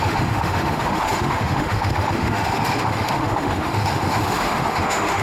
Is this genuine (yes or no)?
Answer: no